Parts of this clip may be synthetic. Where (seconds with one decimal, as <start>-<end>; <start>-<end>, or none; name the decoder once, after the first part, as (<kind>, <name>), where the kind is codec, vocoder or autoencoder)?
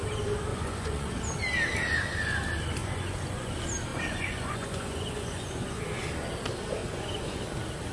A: 0.5-1.1 (vocoder, Vocos); 2.8-3.5; 3.9-5.8; 6.8-7.4